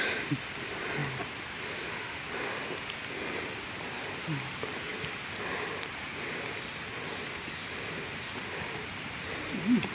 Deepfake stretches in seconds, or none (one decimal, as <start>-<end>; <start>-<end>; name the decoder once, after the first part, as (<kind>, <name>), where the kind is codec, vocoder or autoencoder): none